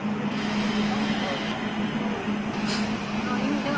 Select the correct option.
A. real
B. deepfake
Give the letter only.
A